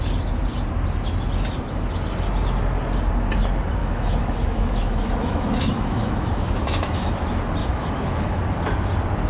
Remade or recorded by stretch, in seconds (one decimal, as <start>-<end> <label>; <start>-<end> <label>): 0.0-3.8 recorded; 3.8-7.1 remade; 7.1-7.6 recorded; 7.6-8.4 remade; 8.4-9.3 recorded